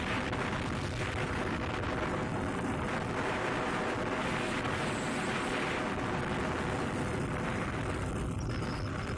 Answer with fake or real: real